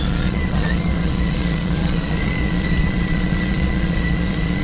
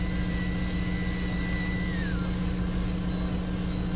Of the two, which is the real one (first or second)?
second